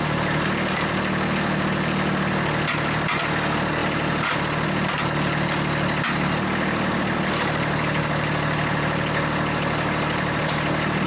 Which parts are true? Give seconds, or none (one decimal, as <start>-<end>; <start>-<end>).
0.0-11.1